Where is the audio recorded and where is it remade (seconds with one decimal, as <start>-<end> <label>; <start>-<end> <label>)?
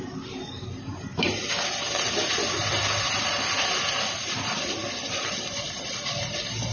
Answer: 0.0-1.1 recorded; 1.1-1.6 remade; 1.6-2.6 recorded; 2.6-3.2 remade; 3.2-4.8 recorded; 4.8-6.7 remade